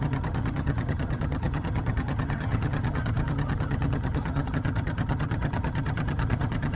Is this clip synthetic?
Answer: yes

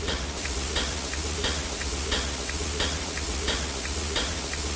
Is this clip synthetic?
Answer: yes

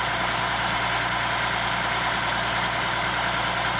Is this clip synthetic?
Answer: no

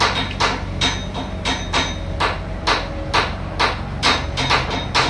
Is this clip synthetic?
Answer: no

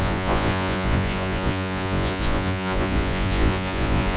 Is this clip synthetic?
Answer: yes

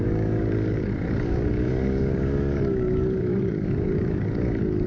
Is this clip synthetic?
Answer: yes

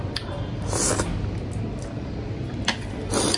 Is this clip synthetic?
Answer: no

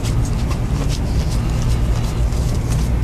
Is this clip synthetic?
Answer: no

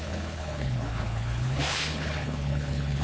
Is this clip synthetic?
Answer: yes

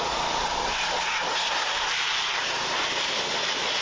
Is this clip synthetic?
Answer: no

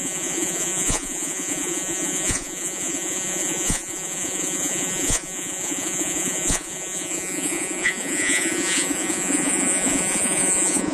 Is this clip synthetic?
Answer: yes